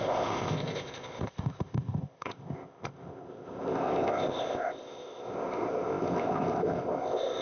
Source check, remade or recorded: remade